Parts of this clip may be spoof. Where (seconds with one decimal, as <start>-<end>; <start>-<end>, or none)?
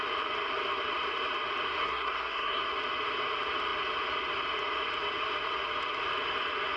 1.8-2.6